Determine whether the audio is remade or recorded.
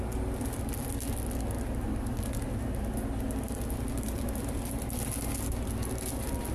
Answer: recorded